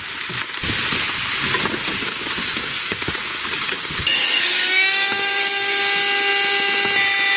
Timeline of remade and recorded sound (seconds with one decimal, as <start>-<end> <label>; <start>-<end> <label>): 0.0-2.0 recorded; 2.0-5.8 remade; 5.8-7.4 recorded